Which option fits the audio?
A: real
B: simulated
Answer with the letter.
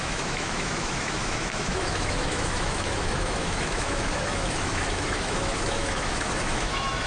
B